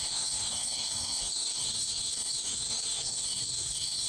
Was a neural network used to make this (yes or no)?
yes